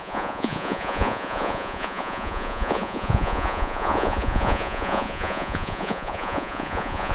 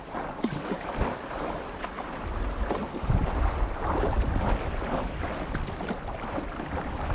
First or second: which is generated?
first